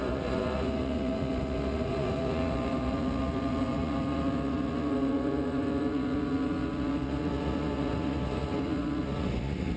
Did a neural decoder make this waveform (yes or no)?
yes